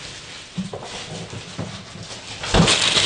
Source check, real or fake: real